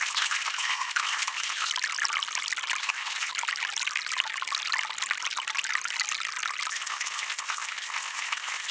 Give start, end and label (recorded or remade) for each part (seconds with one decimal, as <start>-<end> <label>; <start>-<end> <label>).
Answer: 0.0-1.7 remade; 1.7-2.8 recorded; 2.8-3.3 remade; 3.3-6.7 recorded; 6.7-8.7 remade